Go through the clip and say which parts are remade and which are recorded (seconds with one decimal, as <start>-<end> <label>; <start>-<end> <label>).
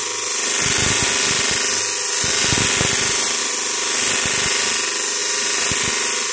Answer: 0.0-5.2 recorded; 5.2-5.7 remade; 5.7-6.3 recorded